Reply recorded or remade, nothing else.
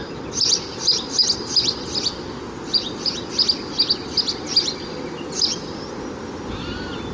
recorded